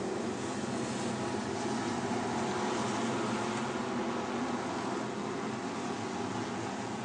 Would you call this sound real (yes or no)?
yes